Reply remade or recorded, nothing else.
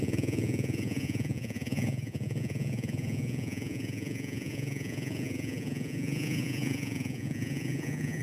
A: remade